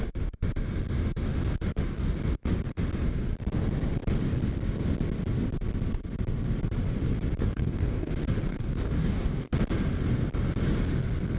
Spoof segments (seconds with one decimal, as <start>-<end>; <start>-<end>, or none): 7.4-8.1; 8.5-9.5